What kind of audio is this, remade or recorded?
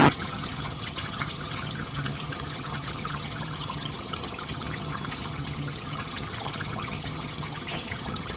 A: remade